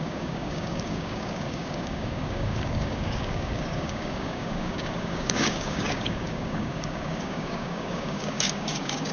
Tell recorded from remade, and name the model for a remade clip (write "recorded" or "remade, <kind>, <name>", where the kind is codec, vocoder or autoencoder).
remade, codec, DAC